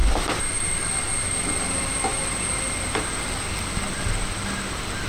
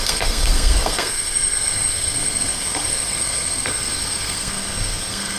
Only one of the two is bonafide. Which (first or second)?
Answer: first